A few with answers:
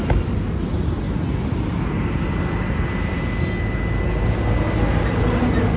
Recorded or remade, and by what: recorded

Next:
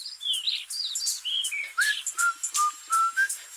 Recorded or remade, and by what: recorded